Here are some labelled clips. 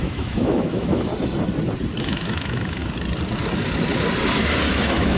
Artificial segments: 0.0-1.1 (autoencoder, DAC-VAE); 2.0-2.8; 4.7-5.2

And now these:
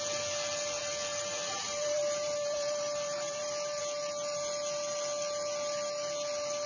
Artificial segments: 0.8-3.8 (vocoder, BigVGAN v2)

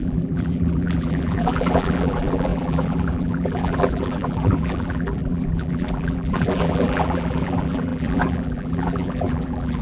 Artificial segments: 0.0-9.8 (vocoder, BigVGAN v2)

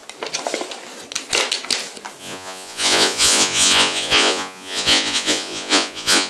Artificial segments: 2.2-6.3 (vocoder, Vocos)

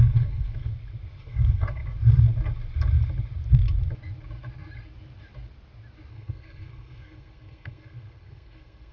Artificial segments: 0.0-0.7 (codec, SNAC); 1.2-1.8; 6.1-8.9

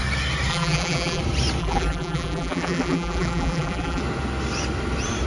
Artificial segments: 0.5-1.2 (vocoder, BigVGAN v2); 1.6-4.0

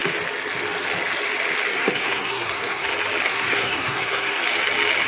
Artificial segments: 1.7-2.9 (codec, SNAC); 3.3-4.4

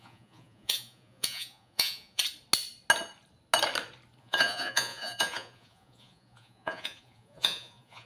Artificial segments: 0.0-2.2 (vocoder, Vocos); 4.2-8.1